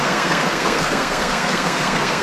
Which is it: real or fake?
fake